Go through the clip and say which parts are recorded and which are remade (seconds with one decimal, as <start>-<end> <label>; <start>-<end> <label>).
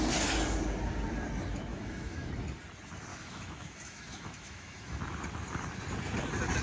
0.0-1.7 recorded; 1.7-2.3 remade; 2.3-3.1 recorded; 3.1-5.0 remade; 5.0-6.6 recorded